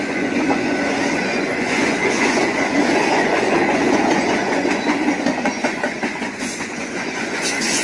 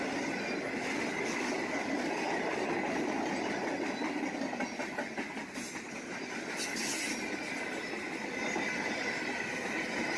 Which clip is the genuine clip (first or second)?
second